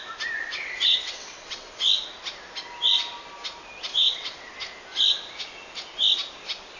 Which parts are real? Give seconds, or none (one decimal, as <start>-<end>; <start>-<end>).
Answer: 0.0-0.4; 1.7-3.9; 4.5-6.8